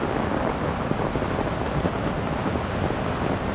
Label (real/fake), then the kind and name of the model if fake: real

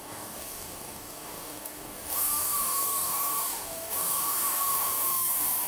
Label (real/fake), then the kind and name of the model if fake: fake, codec, DAC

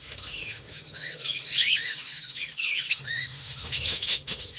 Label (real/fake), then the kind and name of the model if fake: fake, autoencoder, DAC-VAE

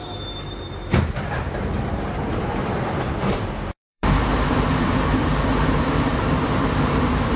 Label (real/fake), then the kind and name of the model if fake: fake, vocoder, BigVGAN v2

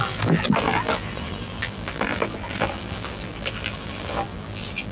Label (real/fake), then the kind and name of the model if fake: fake, vocoder, BigVGAN v2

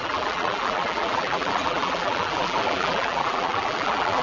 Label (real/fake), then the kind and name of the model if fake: fake, vocoder, BigVGAN v2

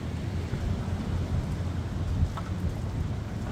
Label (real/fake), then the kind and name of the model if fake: real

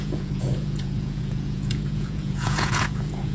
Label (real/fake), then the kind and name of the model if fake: fake, vocoder, Vocos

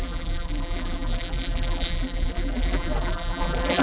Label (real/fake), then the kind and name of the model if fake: fake, vocoder, BigVGAN v2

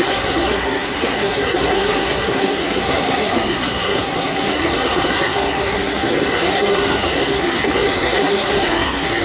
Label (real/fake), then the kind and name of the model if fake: fake, codec, SNAC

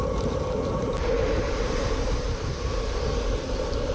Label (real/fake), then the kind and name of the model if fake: fake, vocoder, BigVGAN v2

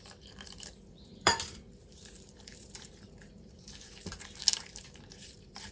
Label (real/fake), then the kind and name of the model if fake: fake, vocoder, BigVGAN v2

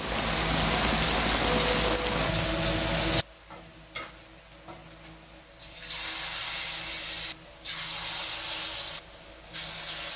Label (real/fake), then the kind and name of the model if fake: real